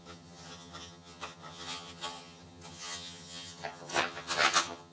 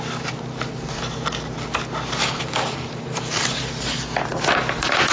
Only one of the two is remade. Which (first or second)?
first